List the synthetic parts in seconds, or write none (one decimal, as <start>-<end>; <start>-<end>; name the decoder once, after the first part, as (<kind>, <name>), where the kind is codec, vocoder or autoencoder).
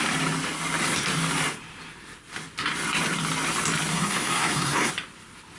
3.9-4.9 (codec, SNAC)